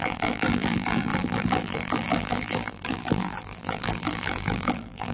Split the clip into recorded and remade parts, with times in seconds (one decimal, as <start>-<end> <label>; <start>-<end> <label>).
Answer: 0.0-5.1 remade

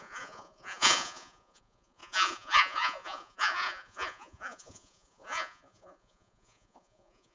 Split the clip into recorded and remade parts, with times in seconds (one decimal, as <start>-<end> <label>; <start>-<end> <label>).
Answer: 0.0-7.3 remade

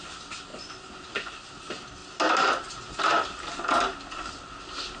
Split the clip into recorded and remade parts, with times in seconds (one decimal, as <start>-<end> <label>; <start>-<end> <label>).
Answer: 0.0-0.5 recorded; 0.5-1.3 remade; 1.3-5.0 recorded

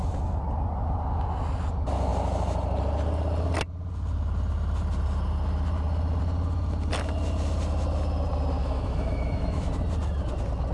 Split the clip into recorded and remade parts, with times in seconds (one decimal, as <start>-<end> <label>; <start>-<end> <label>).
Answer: 0.0-8.6 recorded; 8.6-9.7 remade; 9.7-10.7 recorded

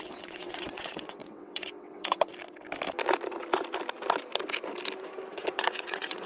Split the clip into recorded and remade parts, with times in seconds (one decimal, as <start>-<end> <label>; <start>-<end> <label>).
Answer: 0.0-2.3 remade; 2.3-5.3 recorded; 5.3-6.3 remade

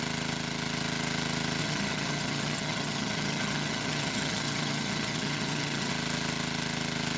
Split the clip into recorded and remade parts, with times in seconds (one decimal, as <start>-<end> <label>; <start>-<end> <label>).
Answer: 0.0-1.6 recorded; 1.6-5.9 remade; 5.9-7.2 recorded